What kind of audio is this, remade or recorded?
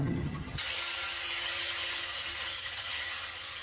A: remade